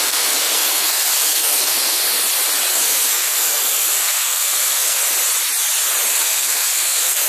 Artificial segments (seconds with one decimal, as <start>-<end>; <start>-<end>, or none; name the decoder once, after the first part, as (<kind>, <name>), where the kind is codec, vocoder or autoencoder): 0.0-2.0 (codec, SNAC); 2.7-5.0; 6.1-7.3